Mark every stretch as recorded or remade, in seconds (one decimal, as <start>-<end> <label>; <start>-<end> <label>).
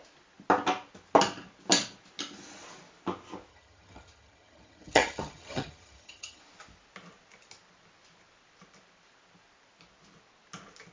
0.0-3.5 recorded; 3.5-6.4 remade; 6.4-10.9 recorded